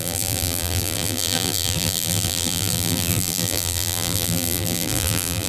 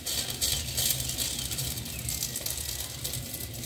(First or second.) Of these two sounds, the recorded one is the second